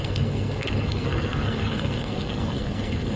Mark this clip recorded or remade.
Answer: remade